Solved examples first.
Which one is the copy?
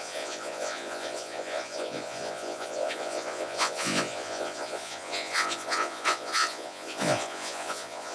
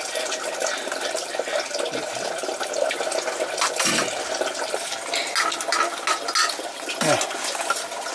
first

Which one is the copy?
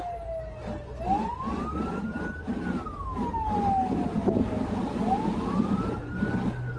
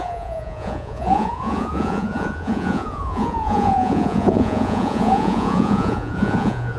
second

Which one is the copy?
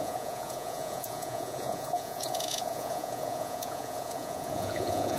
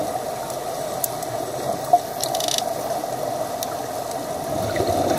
first